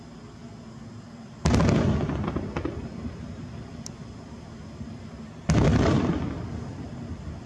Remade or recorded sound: recorded